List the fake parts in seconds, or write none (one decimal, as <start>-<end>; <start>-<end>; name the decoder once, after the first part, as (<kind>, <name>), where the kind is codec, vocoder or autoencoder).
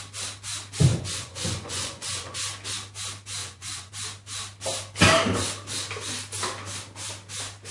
0.9-2.4 (vocoder, Vocos); 3.4-3.9